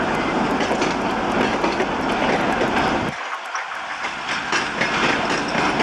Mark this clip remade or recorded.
recorded